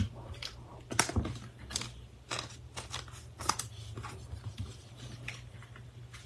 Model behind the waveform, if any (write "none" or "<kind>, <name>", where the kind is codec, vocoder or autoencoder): none